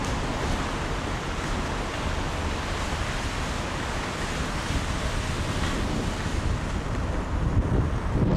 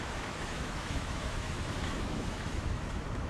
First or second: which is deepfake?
second